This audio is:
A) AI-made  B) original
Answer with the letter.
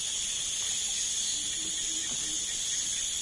B